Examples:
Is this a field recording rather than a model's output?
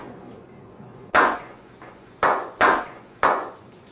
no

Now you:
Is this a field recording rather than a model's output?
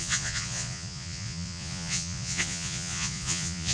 no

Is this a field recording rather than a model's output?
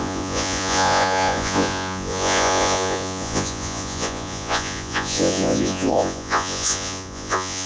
no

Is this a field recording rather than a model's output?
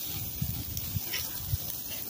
yes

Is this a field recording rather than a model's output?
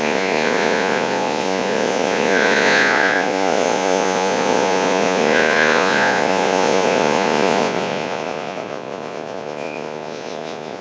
no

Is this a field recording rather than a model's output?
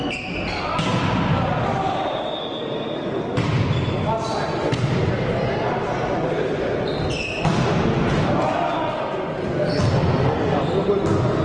yes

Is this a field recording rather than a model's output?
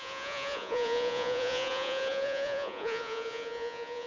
no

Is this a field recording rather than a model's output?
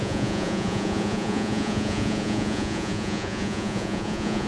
no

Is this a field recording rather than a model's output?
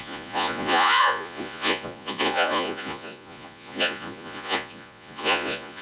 no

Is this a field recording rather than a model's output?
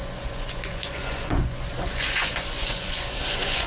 no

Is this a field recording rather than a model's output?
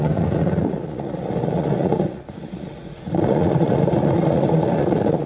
no